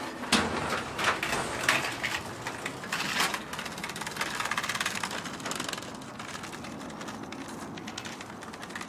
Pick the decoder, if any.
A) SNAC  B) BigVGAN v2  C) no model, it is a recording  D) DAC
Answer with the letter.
C